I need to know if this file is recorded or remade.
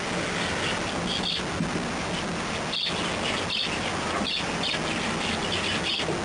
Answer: recorded